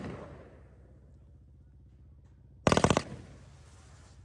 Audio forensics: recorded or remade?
recorded